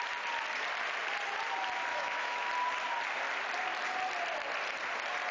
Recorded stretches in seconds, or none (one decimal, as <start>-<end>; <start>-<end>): 0.0-1.9; 2.5-5.3